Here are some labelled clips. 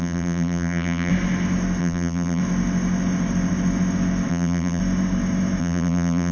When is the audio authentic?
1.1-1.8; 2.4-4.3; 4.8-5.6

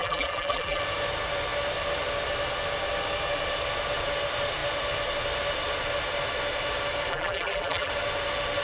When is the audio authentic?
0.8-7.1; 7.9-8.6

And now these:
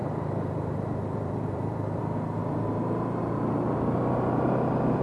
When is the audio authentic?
2.0-2.4; 3.2-5.0